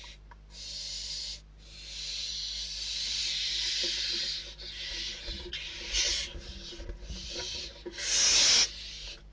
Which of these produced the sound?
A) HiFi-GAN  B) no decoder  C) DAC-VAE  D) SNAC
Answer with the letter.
B